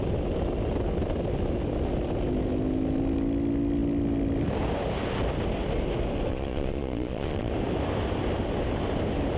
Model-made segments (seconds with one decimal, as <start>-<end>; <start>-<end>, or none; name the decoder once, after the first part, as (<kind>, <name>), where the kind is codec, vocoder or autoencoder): 6.3-7.5 (vocoder, Vocos)